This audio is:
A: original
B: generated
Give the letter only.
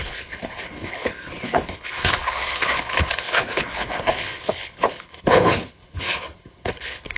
B